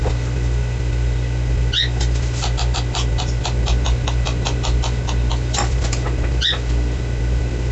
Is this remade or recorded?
recorded